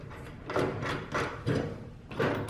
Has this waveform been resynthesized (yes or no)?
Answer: yes